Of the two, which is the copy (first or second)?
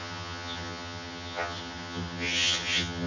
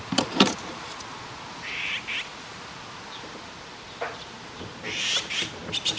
first